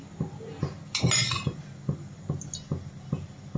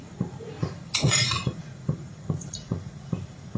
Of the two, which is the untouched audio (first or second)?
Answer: first